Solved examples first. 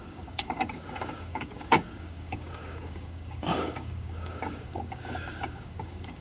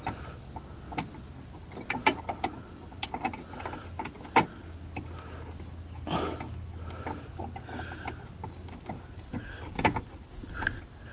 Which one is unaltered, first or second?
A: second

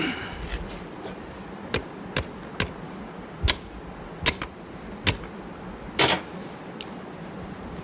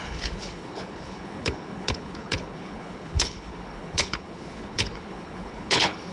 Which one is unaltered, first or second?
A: first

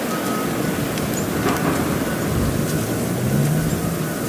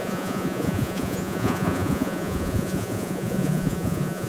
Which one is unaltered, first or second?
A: first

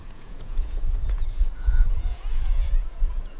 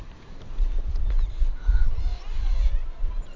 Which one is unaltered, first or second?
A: second